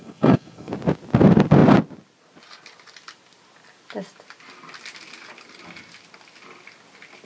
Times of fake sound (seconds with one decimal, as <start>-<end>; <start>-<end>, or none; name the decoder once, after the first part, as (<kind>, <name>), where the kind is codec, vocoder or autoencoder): 0.0-0.7 (codec, SNAC)